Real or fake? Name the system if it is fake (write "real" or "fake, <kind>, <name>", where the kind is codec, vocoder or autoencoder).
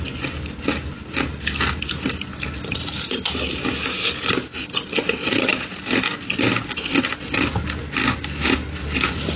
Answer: real